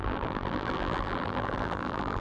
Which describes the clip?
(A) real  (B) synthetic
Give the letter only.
B